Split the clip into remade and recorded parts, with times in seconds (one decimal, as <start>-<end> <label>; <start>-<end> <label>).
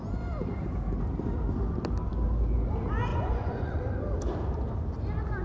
0.0-3.1 recorded; 3.1-3.8 remade; 3.8-5.4 recorded